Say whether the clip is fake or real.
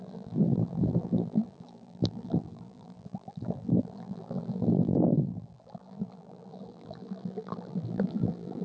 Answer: fake